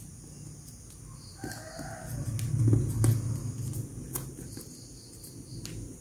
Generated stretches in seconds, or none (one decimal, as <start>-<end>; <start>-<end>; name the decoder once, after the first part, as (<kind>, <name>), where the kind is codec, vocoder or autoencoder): none